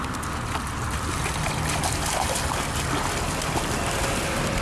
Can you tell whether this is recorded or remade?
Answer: recorded